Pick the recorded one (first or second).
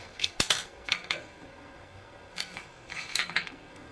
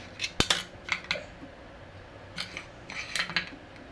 second